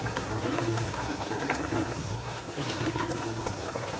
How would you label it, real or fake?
fake